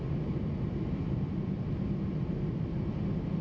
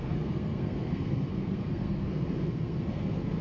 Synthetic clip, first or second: second